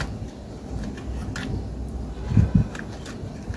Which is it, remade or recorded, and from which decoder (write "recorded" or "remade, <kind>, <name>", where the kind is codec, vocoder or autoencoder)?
recorded